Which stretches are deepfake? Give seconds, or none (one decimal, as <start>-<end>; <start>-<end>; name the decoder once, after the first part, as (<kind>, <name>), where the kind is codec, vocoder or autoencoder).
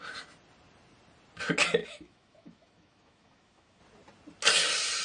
1.8-3.8 (autoencoder, DAC-VAE)